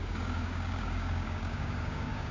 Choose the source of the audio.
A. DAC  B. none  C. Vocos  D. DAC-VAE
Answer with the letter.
A